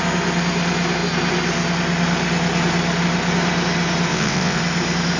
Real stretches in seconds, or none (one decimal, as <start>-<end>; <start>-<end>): 0.0-4.1; 4.6-5.2